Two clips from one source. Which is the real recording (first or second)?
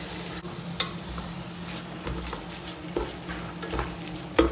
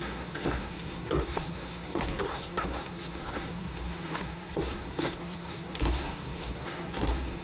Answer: first